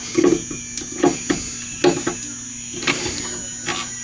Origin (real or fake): real